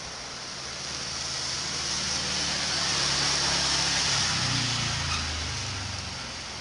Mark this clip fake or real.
real